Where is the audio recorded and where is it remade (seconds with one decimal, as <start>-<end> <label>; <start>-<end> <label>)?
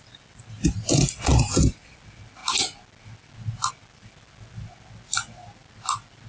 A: 0.0-6.3 recorded